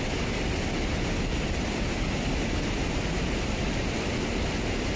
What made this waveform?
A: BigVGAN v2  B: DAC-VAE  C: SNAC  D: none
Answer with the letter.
D